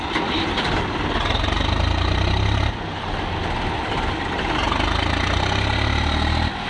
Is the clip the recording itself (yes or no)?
yes